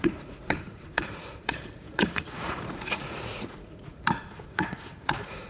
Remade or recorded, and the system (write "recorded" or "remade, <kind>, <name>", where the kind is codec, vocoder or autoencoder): remade, vocoder, Vocos